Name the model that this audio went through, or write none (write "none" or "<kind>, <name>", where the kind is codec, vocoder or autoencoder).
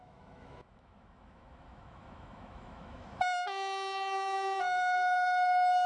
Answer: autoencoder, DAC-VAE